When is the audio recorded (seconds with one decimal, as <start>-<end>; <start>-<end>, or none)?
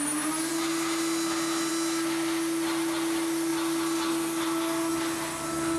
0.0-5.8